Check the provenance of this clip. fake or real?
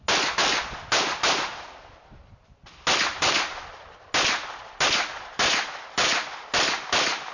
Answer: real